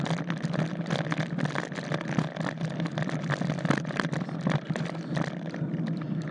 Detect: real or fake real